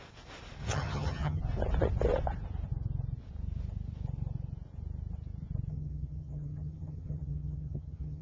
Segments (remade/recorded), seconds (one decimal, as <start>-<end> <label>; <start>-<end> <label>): 0.0-0.6 recorded; 0.6-1.4 remade; 1.4-5.7 recorded; 5.7-8.2 remade